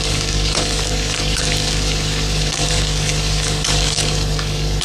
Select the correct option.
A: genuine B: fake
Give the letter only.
B